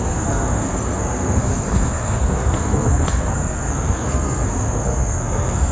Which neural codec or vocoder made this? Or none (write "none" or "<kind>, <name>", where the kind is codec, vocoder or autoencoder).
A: codec, SNAC